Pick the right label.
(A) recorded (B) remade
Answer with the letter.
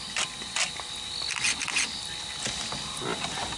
A